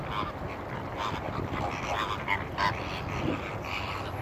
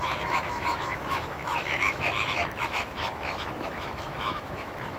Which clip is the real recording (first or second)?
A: first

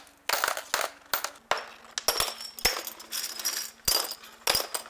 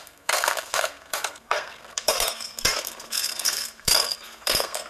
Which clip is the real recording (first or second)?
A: first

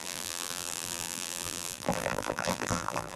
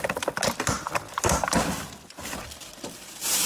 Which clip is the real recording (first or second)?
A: second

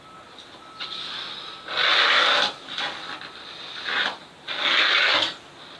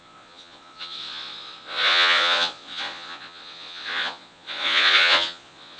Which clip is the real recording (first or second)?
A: first